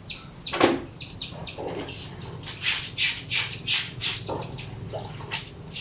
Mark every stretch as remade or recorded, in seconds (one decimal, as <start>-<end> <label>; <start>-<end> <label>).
0.0-5.8 recorded